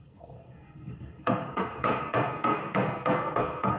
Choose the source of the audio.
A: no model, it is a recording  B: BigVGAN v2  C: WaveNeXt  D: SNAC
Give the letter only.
D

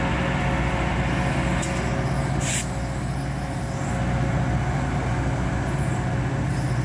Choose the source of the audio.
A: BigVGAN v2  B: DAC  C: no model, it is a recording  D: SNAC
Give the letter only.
C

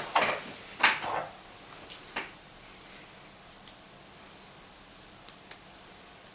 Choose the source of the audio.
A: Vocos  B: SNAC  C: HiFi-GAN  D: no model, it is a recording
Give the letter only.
D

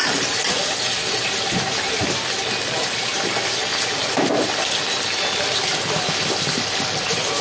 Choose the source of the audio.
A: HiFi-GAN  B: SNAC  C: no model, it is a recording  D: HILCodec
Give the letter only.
C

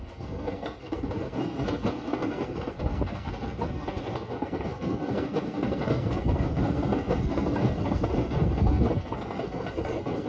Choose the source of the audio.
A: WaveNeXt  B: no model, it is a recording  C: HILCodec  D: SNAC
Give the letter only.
D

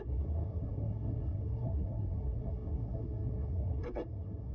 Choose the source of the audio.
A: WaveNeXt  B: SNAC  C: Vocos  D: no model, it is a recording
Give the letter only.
B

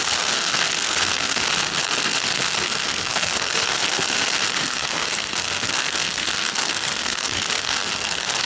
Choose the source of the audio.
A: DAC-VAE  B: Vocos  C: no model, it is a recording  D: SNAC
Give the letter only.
D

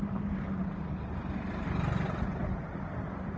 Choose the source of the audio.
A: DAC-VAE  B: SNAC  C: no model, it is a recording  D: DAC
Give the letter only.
C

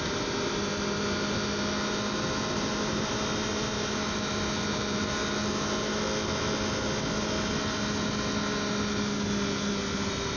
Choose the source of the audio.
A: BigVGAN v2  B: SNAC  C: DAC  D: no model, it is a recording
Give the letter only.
D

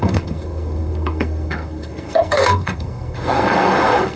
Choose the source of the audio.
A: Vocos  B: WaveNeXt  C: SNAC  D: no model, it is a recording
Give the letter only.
C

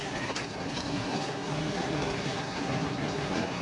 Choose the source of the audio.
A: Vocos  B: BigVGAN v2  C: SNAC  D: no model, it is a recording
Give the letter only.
C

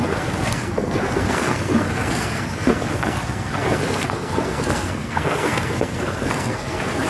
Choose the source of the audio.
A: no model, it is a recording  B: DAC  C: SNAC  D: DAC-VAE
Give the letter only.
C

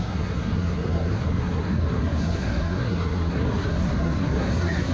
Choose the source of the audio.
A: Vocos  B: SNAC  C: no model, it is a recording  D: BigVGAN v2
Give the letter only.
B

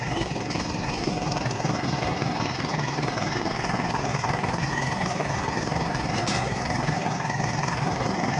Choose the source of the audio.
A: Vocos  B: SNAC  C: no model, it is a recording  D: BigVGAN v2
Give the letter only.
B